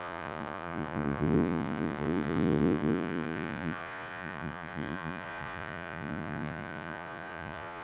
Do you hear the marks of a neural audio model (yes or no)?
yes